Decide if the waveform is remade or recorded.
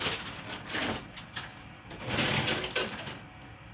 recorded